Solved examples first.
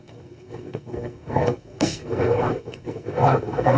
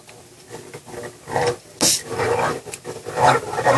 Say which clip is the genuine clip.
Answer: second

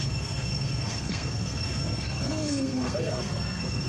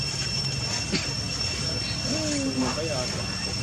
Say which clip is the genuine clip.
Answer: second